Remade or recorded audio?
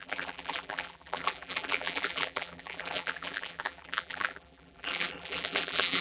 remade